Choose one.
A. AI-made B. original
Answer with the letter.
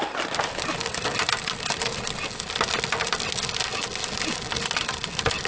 B